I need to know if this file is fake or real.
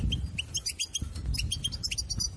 real